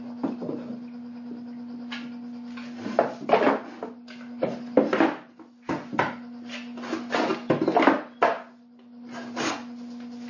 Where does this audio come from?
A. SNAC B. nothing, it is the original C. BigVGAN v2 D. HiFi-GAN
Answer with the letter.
B